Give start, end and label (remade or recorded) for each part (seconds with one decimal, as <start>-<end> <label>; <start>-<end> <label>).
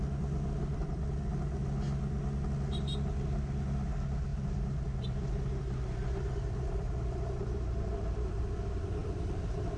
0.0-4.3 recorded; 4.3-8.4 remade; 8.4-9.0 recorded; 9.0-9.8 remade